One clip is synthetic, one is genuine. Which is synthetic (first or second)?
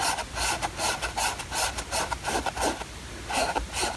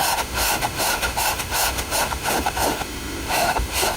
second